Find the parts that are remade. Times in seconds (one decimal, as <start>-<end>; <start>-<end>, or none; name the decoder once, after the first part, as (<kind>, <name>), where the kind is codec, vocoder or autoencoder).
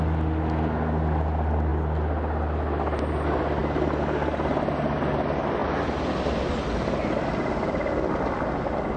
none